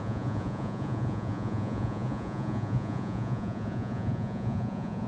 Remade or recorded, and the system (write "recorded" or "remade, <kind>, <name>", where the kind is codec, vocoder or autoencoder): remade, vocoder, Vocos